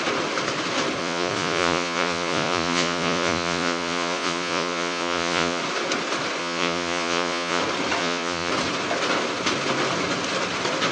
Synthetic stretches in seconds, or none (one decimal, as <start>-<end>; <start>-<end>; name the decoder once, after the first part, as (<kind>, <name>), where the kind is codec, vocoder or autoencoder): 1.0-5.6 (vocoder, Vocos); 6.4-7.6; 8.0-8.5